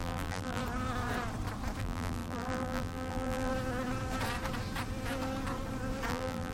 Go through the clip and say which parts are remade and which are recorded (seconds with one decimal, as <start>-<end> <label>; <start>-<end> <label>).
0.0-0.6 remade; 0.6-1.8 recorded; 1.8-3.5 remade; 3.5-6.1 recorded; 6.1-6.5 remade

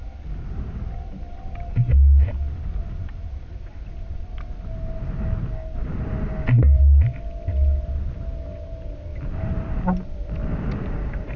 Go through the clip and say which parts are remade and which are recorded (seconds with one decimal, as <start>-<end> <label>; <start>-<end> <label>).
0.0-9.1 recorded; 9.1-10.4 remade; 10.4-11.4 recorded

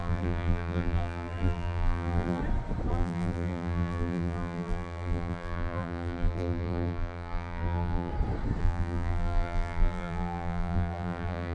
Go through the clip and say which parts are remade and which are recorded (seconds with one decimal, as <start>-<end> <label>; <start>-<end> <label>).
0.0-2.4 remade; 2.4-2.9 recorded; 2.9-8.1 remade; 8.1-8.6 recorded; 8.6-11.5 remade

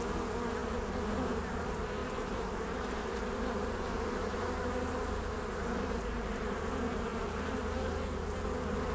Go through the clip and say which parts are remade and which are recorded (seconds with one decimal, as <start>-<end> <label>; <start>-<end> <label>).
0.0-2.0 recorded; 2.0-6.3 remade; 6.3-8.9 recorded

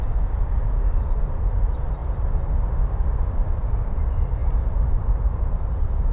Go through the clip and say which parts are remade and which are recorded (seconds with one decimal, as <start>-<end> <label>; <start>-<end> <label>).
0.0-2.0 remade; 2.0-3.5 recorded; 3.5-4.4 remade; 4.4-4.9 recorded; 4.9-6.1 remade

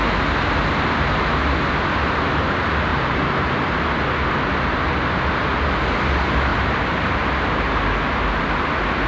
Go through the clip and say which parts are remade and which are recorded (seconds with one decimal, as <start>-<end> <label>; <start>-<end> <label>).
0.0-2.9 recorded; 2.9-3.5 remade; 3.5-6.5 recorded; 6.5-7.3 remade; 7.3-9.1 recorded

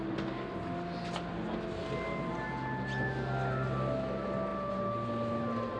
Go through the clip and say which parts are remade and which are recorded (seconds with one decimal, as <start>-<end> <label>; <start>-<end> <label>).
0.0-5.8 recorded